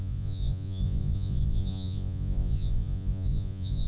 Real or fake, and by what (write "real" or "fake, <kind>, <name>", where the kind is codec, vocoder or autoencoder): fake, vocoder, Vocos